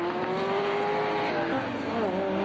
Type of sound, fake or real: real